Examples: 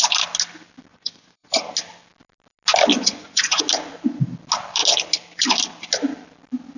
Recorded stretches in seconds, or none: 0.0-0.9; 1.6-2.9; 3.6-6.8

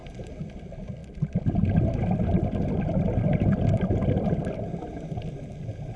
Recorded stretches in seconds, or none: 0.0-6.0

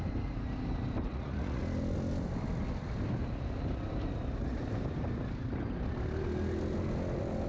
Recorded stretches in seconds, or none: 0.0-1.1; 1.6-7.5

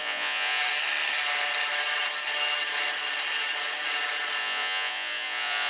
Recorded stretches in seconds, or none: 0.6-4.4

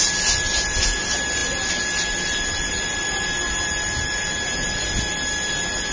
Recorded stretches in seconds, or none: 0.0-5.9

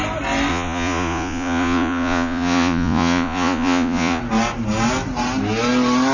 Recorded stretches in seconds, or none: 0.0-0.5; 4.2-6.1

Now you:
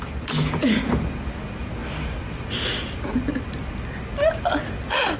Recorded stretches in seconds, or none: 0.0-5.2